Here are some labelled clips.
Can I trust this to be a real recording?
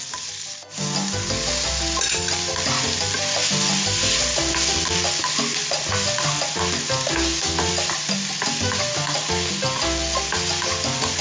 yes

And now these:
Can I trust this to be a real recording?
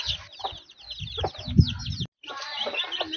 yes